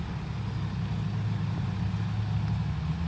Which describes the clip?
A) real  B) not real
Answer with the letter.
A